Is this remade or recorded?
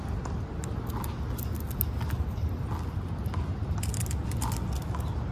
recorded